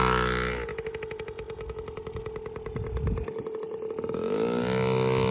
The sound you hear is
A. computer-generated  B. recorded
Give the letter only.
B